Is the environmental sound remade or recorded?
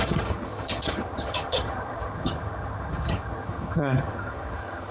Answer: remade